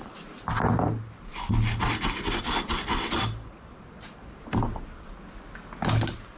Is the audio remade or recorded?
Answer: recorded